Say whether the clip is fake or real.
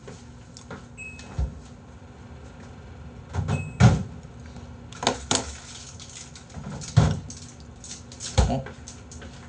real